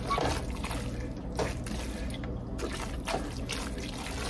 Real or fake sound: real